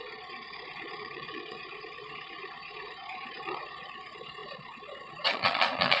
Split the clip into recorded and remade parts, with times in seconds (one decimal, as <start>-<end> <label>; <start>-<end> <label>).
0.0-6.0 remade